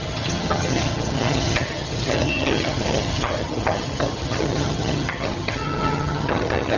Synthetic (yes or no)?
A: yes